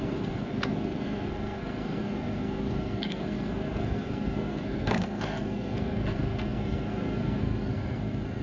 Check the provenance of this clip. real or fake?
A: fake